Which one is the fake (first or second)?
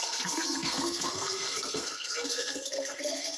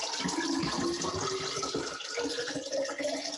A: first